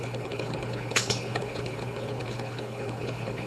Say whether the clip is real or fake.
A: fake